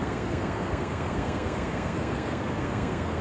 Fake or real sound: fake